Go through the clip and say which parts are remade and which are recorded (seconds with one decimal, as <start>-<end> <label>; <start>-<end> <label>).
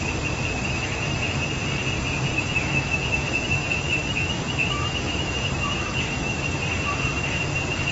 0.0-0.5 recorded; 0.5-1.4 remade; 1.4-2.3 recorded; 2.3-6.4 remade; 6.4-7.9 recorded